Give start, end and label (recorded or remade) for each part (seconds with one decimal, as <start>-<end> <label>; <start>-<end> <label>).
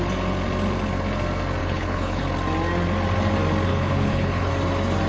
0.0-1.6 recorded; 1.6-2.2 remade; 2.2-3.7 recorded; 3.7-4.5 remade; 4.5-5.1 recorded